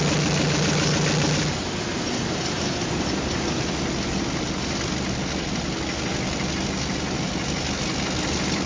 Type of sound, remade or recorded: recorded